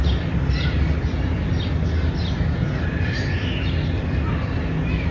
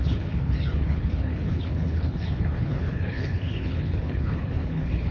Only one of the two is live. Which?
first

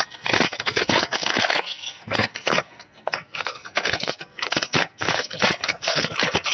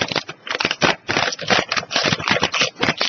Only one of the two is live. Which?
second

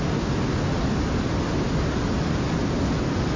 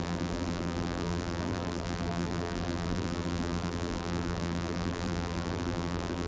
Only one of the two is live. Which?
first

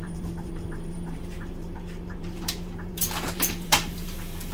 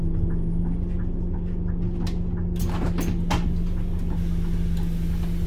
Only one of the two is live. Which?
second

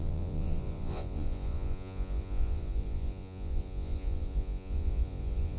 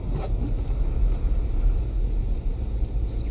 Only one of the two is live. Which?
second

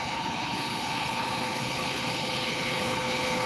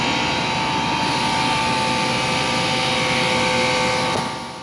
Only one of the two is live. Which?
second